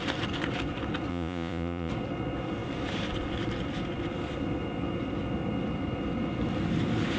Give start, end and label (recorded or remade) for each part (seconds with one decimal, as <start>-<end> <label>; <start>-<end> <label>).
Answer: 0.0-1.1 recorded; 1.1-1.9 remade; 1.9-7.2 recorded